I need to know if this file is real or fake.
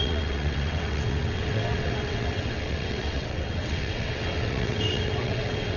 fake